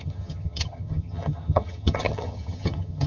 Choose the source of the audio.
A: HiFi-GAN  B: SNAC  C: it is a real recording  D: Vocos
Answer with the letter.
A